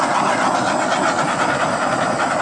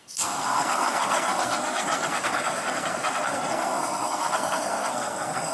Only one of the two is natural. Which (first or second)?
first